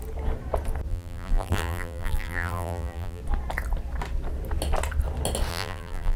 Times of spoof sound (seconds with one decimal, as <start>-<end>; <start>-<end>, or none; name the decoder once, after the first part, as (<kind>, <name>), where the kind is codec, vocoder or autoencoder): 0.9-3.2 (vocoder, BigVGAN v2); 5.5-6.2